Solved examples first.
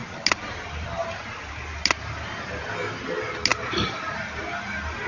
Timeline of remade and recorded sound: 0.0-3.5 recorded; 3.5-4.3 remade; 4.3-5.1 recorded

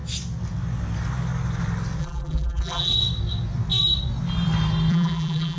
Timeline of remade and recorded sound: 0.0-2.0 recorded; 2.0-2.9 remade; 2.9-4.9 recorded; 4.9-5.6 remade

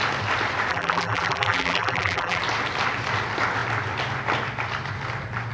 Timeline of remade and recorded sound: 0.0-0.7 recorded; 0.7-2.4 remade; 2.4-5.5 recorded

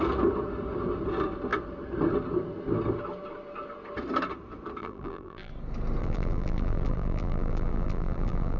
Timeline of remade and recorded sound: 0.0-4.8 recorded; 4.8-5.5 remade; 5.5-6.0 recorded; 6.0-8.6 remade

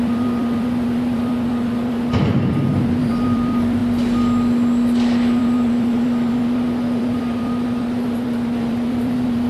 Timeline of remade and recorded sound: 0.0-3.8 remade; 3.8-5.4 recorded; 5.4-9.5 remade

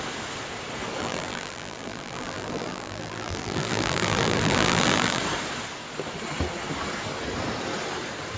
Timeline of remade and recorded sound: 0.0-1.0 recorded; 1.0-5.2 remade; 5.2-8.4 recorded

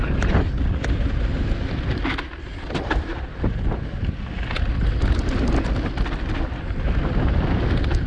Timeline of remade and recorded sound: 0.0-8.1 recorded

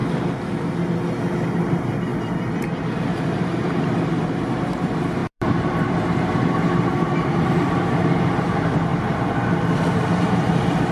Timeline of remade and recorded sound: 0.0-1.5 recorded; 1.5-2.1 remade; 2.1-3.1 recorded; 3.1-8.9 remade; 8.9-10.2 recorded; 10.2-10.9 remade